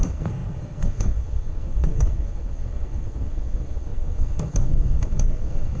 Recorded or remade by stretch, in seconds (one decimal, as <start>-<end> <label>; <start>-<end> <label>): 0.0-5.8 remade